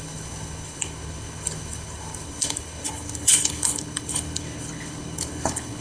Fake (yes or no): yes